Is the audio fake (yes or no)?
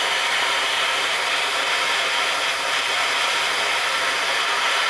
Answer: yes